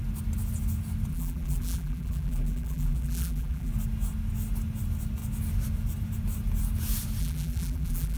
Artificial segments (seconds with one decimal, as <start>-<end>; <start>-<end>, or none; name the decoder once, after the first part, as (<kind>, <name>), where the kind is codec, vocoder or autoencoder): 1.1-3.7 (vocoder, BigVGAN v2); 7.2-8.2